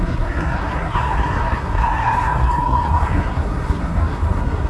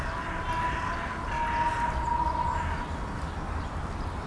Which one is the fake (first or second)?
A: first